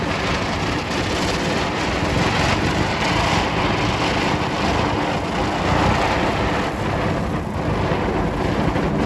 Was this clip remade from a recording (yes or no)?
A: no